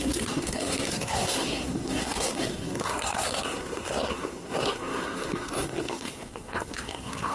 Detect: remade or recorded remade